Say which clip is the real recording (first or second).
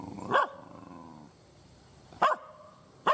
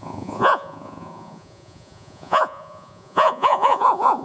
first